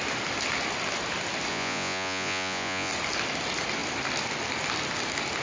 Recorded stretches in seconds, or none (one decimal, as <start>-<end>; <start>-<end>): 0.0-1.5; 2.9-5.4